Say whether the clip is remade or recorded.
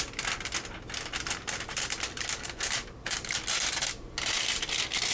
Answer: recorded